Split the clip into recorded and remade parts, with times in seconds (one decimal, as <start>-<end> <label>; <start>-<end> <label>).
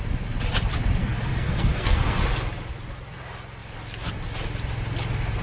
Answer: 0.0-1.0 recorded; 1.0-2.2 remade; 2.2-5.4 recorded